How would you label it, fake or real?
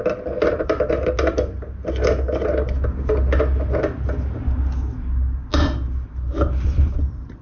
real